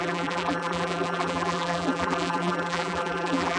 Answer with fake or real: fake